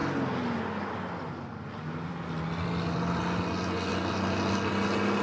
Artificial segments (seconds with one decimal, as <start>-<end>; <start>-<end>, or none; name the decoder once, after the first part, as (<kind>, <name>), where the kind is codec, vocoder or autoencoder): none